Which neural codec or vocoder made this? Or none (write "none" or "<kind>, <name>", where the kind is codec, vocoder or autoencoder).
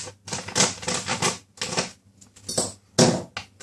none